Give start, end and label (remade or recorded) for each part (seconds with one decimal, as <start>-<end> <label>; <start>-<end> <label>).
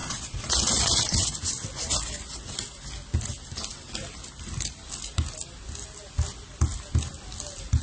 0.0-1.4 remade; 1.4-7.8 recorded